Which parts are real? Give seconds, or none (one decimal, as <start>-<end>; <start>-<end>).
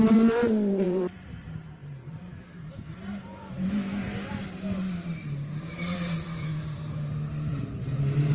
none